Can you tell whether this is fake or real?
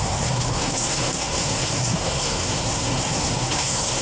fake